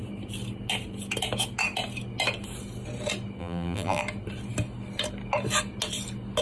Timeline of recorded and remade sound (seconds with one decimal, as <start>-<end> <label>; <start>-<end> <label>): 0.0-3.4 recorded; 3.4-4.0 remade; 4.0-6.4 recorded